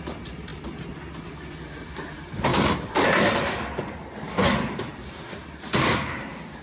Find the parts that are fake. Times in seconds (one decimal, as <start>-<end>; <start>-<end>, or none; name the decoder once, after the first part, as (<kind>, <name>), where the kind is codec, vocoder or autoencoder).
0.0-0.5 (vocoder, BigVGAN v2); 1.2-6.6